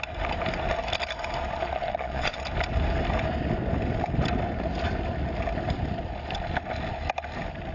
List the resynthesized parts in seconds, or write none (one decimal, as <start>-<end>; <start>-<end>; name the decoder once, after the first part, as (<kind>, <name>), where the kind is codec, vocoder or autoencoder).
1.6-2.4 (vocoder, Vocos)